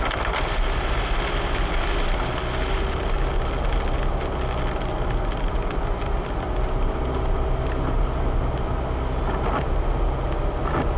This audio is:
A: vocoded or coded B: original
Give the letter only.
B